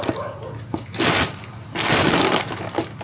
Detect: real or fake real